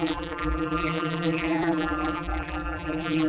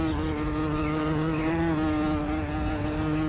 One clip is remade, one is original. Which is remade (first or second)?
first